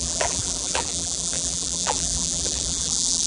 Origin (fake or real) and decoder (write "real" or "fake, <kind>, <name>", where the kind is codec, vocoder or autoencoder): fake, vocoder, BigVGAN v2